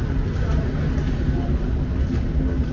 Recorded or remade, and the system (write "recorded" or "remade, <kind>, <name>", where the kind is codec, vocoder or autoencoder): recorded